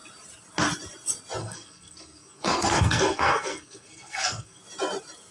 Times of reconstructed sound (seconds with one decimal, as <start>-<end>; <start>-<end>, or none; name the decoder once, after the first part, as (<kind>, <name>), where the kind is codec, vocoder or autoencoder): 1.4-4.6 (codec, SNAC)